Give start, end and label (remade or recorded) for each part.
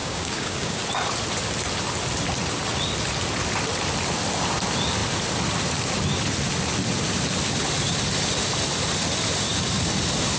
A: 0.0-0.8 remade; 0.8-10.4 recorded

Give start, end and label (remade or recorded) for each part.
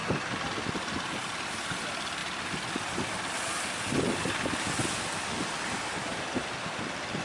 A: 0.0-7.2 recorded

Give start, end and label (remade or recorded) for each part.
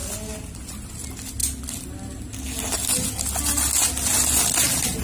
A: 0.0-5.0 recorded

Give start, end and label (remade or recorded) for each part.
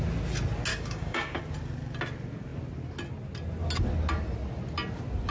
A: 0.0-0.7 recorded; 0.7-1.4 remade; 1.4-5.3 recorded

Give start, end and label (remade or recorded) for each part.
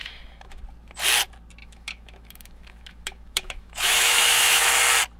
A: 0.0-0.6 remade; 0.6-1.6 recorded; 1.6-4.7 remade; 4.7-5.2 recorded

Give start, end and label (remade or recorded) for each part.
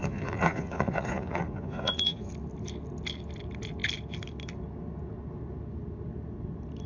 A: 0.0-2.3 remade; 2.3-6.9 recorded